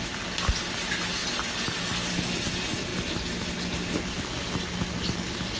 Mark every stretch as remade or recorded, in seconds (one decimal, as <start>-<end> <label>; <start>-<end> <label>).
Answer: 0.0-5.6 recorded